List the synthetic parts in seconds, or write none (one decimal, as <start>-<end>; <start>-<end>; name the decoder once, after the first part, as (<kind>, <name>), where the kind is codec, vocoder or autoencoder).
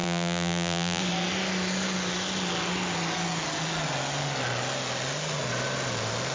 0.0-1.0 (vocoder, BigVGAN v2)